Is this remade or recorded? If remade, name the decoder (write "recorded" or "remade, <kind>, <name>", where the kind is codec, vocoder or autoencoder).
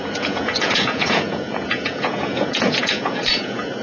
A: remade, vocoder, Vocos